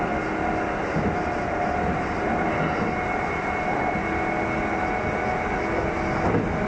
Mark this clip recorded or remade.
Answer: recorded